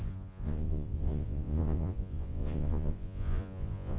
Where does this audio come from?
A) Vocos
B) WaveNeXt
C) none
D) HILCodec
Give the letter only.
A